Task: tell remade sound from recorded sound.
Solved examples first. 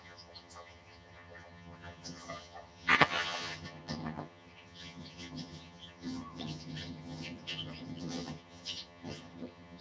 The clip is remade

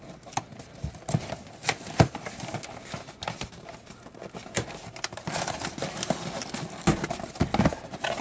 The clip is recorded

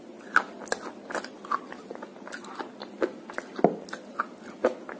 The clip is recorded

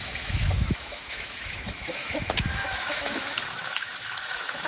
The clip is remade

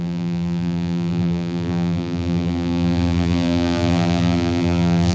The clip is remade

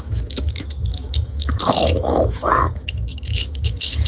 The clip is remade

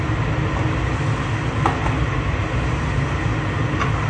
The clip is recorded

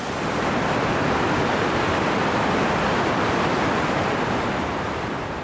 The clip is remade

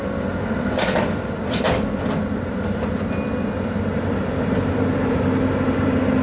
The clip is recorded